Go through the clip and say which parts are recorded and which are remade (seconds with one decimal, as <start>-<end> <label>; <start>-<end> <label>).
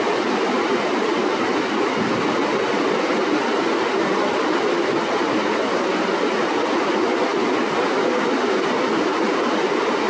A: 0.0-10.1 recorded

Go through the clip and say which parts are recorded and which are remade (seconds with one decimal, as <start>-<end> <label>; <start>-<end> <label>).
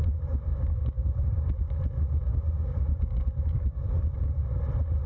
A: 0.0-0.5 recorded; 0.5-1.3 remade; 1.3-2.3 recorded; 2.3-4.3 remade; 4.3-5.1 recorded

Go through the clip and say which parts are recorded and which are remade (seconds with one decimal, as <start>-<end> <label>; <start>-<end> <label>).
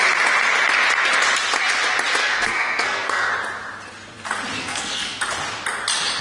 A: 0.0-2.2 recorded; 2.2-3.3 remade; 3.3-4.6 recorded; 4.6-5.2 remade; 5.2-6.2 recorded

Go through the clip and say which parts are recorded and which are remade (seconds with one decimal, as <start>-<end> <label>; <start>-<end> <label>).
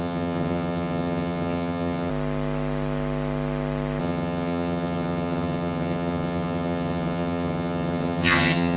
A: 0.0-2.1 remade; 2.1-4.0 recorded; 4.0-8.8 remade